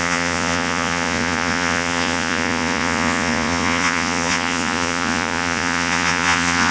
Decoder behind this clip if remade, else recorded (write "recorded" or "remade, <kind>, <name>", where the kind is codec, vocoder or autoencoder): remade, vocoder, Vocos